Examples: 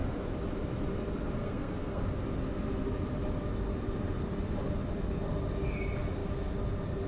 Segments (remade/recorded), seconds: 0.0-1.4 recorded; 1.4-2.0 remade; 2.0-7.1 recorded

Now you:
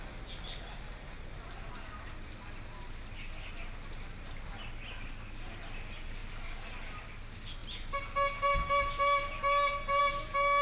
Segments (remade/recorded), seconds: 0.0-10.6 recorded

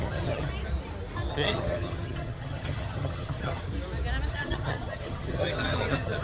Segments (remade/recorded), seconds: 0.0-0.5 remade; 0.5-1.3 recorded; 1.3-3.6 remade; 3.6-4.3 recorded; 4.3-6.2 remade